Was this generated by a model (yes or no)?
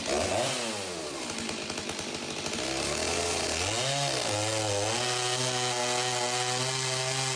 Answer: no